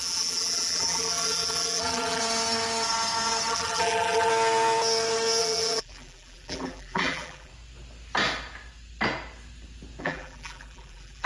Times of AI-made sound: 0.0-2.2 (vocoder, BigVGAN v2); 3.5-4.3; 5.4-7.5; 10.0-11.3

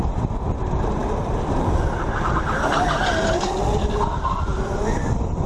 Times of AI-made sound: none

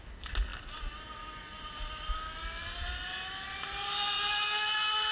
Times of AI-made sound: none

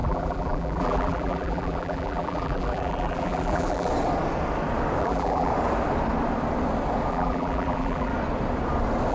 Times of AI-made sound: 0.0-3.9 (vocoder, BigVGAN v2); 5.0-5.5; 7.1-8.1

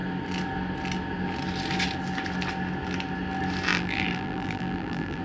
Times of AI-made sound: 3.7-5.2 (vocoder, BigVGAN v2)